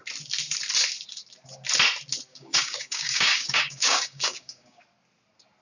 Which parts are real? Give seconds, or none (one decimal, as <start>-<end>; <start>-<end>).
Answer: 0.0-2.3; 4.8-5.6